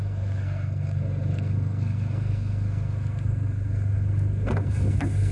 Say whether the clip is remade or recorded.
remade